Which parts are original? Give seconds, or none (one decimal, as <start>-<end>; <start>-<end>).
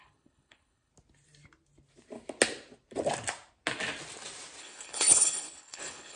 0.9-4.6